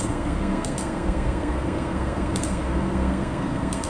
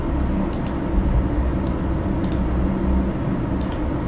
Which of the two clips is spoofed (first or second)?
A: first